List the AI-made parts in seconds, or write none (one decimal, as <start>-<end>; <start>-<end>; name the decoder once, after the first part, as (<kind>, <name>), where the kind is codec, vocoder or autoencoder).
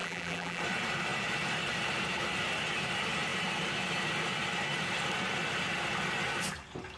0.0-0.6 (vocoder, BigVGAN v2)